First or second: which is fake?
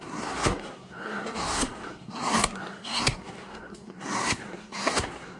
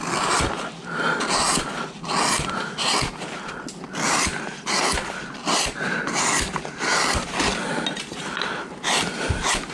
first